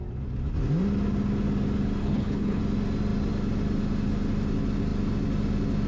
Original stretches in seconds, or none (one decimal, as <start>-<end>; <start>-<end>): 0.0-2.0; 2.6-5.9